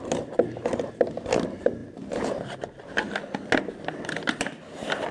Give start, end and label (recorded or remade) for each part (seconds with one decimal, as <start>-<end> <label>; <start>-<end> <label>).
0.0-5.1 recorded